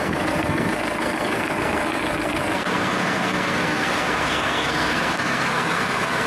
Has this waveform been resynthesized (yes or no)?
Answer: yes